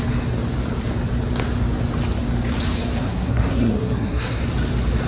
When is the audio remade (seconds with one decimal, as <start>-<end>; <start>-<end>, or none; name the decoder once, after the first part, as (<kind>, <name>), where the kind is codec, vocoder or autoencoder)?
3.0-4.4 (codec, SNAC)